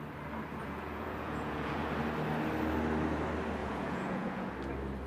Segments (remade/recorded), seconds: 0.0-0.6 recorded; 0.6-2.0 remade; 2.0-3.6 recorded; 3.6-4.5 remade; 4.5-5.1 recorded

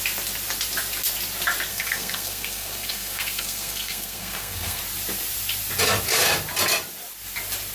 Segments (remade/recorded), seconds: 0.0-1.7 recorded; 1.7-4.8 remade; 4.8-7.7 recorded

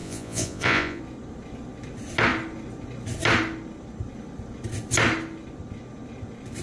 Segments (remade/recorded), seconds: 0.0-1.0 remade; 1.0-6.6 recorded

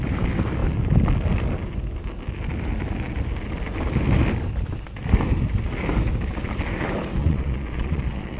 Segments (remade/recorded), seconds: 0.0-7.2 recorded; 7.2-8.4 remade

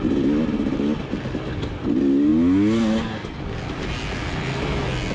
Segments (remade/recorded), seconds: 0.0-5.1 recorded

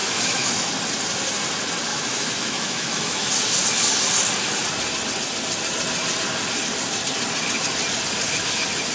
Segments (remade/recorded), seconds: 0.0-0.7 remade; 0.7-1.9 recorded; 1.9-3.3 remade; 3.3-8.9 recorded

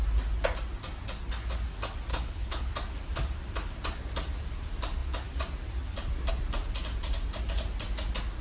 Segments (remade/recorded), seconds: 0.0-2.1 recorded; 2.1-2.7 remade; 2.7-8.4 recorded